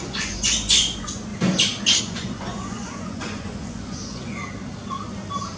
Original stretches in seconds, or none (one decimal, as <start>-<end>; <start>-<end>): 1.3-2.0; 4.4-5.6